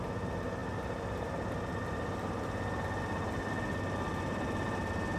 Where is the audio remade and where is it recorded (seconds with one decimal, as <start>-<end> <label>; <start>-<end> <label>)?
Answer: 0.0-5.2 recorded